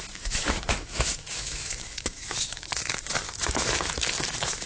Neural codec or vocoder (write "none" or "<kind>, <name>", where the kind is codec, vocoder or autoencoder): autoencoder, DAC-VAE